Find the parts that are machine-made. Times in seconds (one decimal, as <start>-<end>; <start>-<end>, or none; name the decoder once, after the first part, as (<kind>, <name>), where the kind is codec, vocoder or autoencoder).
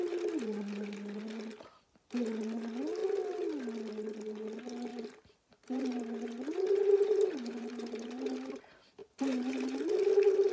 4.9-8.6 (vocoder, BigVGAN v2); 9.0-9.8